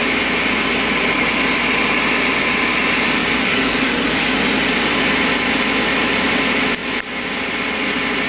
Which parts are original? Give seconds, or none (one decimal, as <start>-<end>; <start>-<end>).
0.0-3.2; 4.4-8.3